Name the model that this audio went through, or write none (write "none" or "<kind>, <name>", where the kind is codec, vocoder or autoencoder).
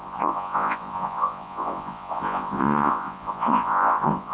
vocoder, Vocos